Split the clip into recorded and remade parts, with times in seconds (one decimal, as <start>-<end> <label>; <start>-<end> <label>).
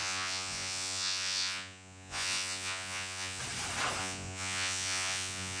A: 0.0-3.4 remade; 3.4-4.0 recorded; 4.0-5.6 remade